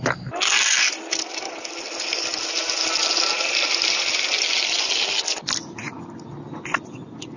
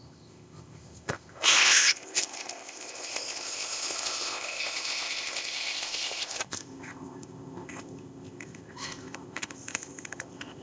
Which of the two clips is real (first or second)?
first